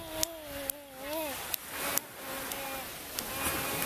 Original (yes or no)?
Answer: yes